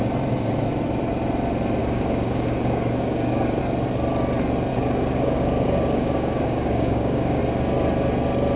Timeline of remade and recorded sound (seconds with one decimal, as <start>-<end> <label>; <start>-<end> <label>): 0.0-1.8 recorded; 1.8-3.6 remade; 3.6-4.7 recorded; 4.7-7.4 remade; 7.4-8.6 recorded